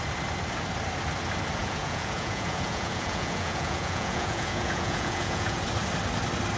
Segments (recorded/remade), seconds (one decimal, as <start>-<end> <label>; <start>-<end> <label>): 0.0-1.6 recorded; 1.6-5.6 remade; 5.6-6.6 recorded